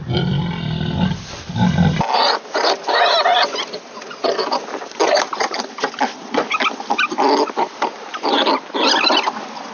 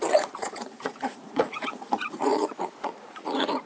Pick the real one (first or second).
first